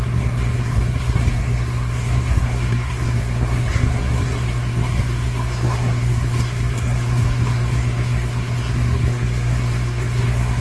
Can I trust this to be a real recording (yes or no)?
no